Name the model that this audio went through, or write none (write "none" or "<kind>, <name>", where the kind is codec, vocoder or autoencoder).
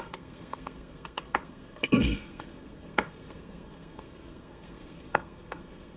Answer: codec, SNAC